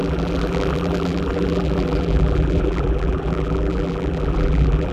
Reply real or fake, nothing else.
fake